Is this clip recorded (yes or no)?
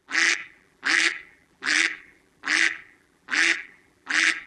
no